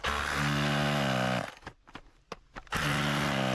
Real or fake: real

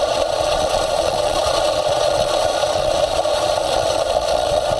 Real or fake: fake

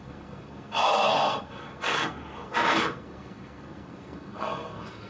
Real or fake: fake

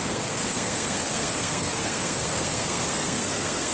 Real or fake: fake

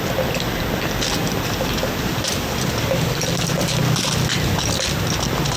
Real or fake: real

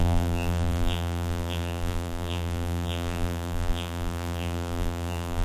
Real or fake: fake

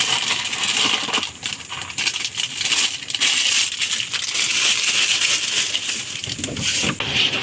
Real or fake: real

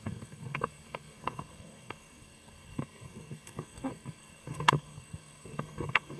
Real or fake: fake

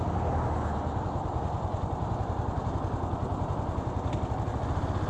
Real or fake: real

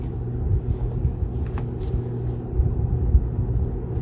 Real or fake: real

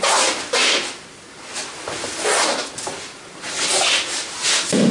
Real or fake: real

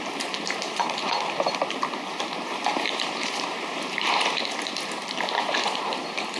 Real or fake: fake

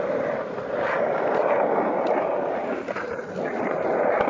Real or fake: real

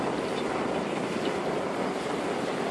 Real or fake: real